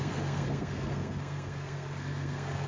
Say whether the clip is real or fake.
fake